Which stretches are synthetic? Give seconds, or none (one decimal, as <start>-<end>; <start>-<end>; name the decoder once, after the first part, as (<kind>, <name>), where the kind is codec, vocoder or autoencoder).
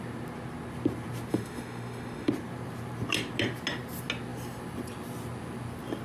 1.3-2.3 (autoencoder, DAC-VAE)